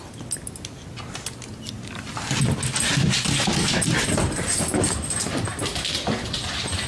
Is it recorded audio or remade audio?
recorded